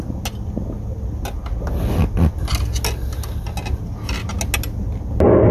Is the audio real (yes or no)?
yes